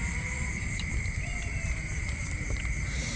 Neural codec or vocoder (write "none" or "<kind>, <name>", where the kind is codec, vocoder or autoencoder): vocoder, BigVGAN v2